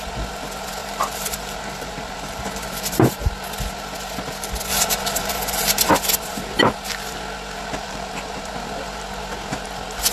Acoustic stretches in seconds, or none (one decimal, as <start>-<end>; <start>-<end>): 0.0-0.8; 3.1-4.7; 5.9-10.1